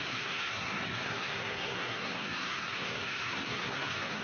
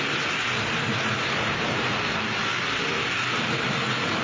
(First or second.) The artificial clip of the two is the first